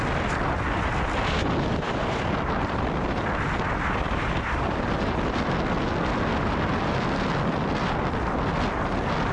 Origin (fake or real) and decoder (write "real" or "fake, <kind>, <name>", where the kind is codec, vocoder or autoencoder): real